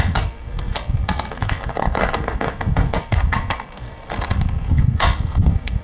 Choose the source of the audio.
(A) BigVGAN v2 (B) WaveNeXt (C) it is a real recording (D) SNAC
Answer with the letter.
D